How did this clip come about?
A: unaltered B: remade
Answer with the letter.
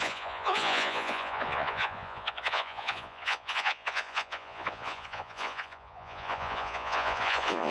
B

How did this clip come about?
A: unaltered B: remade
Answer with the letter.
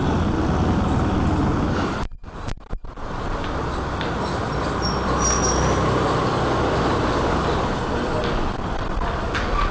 A